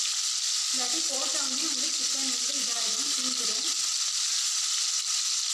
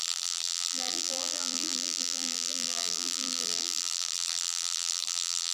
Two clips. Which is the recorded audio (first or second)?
first